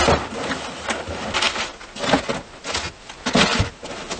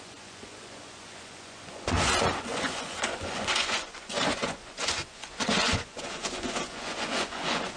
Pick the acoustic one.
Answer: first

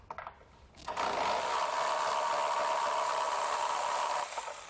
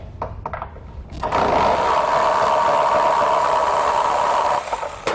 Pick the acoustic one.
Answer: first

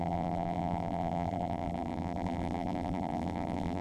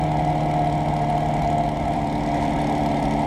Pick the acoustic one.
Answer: second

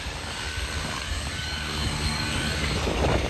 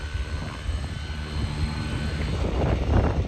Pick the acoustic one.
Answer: second